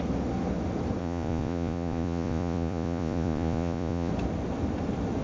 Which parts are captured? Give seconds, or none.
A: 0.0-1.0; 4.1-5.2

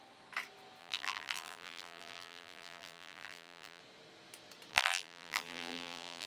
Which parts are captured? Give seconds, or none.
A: 0.0-0.8; 3.8-4.7

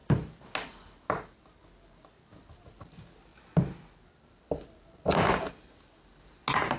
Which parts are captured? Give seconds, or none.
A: 0.0-6.8

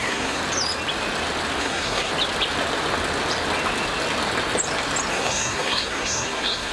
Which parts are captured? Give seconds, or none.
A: 0.4-1.6; 2.1-5.1

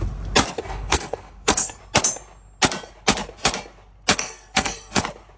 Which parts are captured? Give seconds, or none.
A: 0.0-0.6; 1.8-4.1; 5.0-5.4

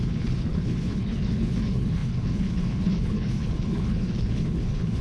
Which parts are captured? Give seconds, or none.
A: none

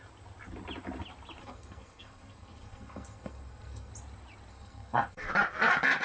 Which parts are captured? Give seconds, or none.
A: 0.0-1.4; 3.9-4.5; 5.3-6.0